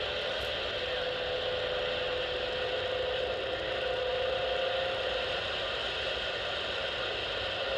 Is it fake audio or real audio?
real